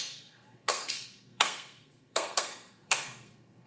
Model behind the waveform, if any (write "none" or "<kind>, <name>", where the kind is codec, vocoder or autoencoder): codec, SNAC